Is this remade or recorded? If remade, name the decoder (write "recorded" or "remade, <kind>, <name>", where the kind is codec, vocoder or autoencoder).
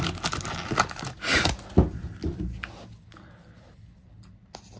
recorded